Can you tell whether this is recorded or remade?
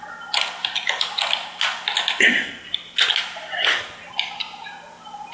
recorded